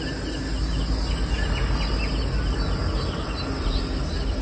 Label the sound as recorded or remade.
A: recorded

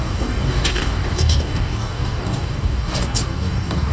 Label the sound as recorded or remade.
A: remade